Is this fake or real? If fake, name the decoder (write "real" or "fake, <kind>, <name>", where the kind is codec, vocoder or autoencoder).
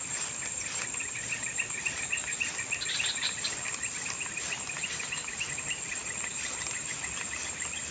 real